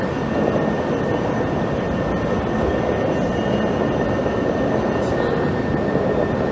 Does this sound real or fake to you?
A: real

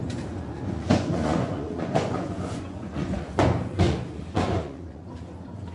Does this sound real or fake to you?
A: fake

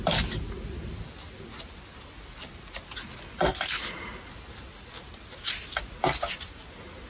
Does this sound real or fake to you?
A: real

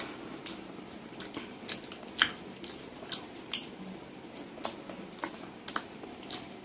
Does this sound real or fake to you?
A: real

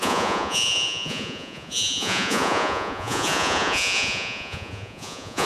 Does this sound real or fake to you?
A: fake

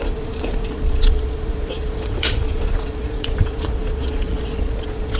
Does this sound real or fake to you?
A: fake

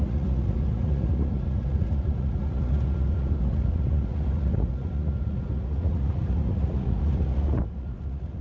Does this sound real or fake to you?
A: fake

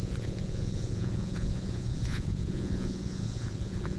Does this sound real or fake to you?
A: fake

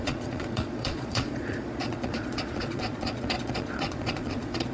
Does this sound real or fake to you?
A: fake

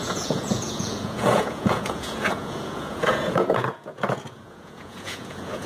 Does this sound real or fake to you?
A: fake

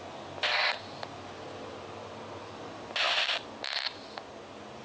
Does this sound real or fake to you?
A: real